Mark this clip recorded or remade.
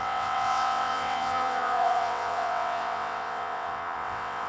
remade